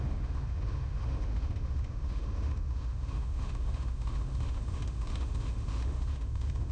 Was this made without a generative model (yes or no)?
no